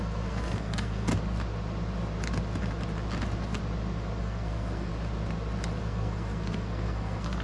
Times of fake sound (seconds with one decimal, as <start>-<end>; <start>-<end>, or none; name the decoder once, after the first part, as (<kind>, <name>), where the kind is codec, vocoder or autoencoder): 0.0-1.1 (codec, SNAC); 4.2-4.9; 5.8-7.4